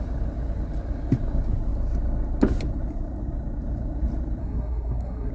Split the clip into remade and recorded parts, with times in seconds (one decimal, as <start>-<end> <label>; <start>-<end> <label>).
0.0-4.4 recorded; 4.4-5.3 remade